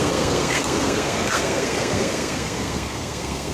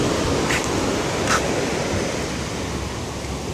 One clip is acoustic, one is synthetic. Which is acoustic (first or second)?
second